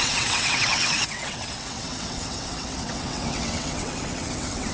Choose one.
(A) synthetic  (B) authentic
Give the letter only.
A